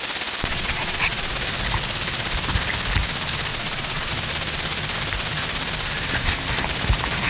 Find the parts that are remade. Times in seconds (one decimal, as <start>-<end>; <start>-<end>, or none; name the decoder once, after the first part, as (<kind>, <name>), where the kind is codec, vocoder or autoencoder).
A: 0.5-1.3 (vocoder, Vocos); 3.5-4.1